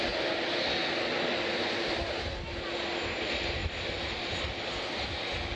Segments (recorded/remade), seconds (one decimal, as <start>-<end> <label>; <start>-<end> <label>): 0.0-5.6 recorded